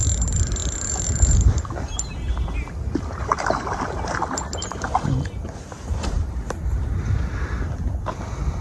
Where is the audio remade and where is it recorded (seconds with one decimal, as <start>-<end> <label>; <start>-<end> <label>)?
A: 0.0-5.9 recorded; 5.9-6.8 remade; 6.8-8.6 recorded